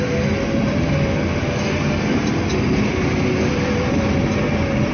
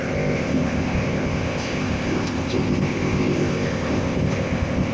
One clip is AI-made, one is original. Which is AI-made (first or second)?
second